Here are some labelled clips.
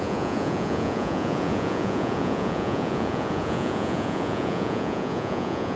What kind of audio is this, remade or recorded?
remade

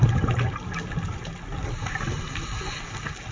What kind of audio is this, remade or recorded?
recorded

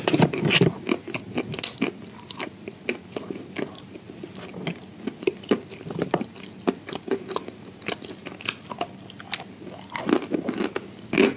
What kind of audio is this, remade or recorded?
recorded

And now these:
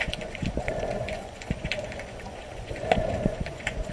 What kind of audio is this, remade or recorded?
remade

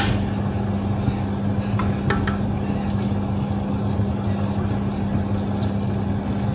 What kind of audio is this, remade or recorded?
recorded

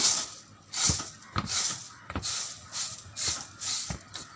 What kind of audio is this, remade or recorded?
recorded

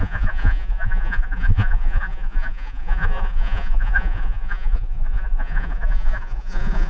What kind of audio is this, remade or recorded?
remade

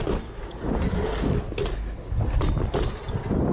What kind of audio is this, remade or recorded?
recorded